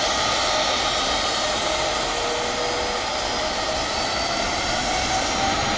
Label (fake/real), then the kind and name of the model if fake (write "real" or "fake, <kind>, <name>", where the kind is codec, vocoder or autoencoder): real